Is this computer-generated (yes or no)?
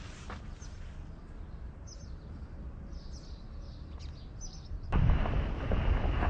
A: no